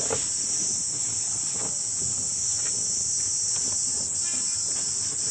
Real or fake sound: real